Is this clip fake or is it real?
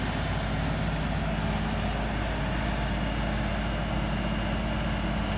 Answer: real